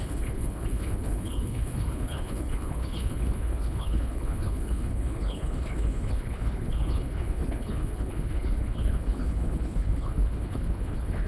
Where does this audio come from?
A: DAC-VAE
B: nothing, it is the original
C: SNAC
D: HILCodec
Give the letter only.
D